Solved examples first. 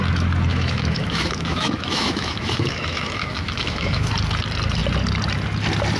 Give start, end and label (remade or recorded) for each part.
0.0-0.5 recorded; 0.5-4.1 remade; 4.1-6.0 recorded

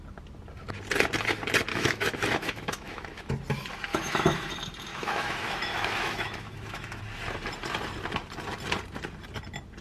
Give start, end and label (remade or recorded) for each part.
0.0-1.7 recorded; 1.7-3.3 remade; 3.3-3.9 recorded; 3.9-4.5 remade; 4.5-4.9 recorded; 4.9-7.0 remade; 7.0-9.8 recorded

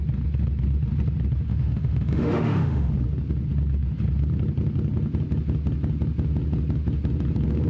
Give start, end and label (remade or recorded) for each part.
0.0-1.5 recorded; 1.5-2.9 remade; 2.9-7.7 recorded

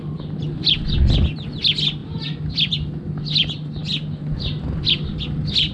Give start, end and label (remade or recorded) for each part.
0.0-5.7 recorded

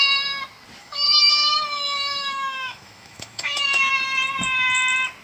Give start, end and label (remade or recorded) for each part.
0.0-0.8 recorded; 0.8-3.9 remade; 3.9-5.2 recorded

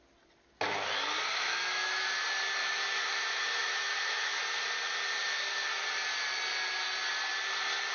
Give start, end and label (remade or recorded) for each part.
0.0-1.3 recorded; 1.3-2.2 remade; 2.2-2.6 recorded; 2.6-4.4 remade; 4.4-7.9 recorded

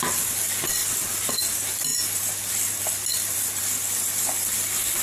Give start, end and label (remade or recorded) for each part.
0.0-5.0 recorded

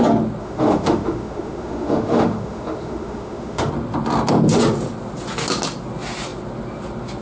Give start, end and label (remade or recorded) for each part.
0.0-0.4 recorded; 0.4-3.7 remade; 3.7-7.2 recorded